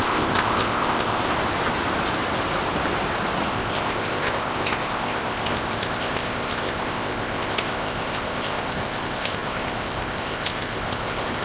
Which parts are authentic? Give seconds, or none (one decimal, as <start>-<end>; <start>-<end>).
1.2-3.5